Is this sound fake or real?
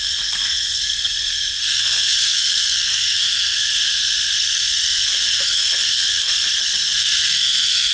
fake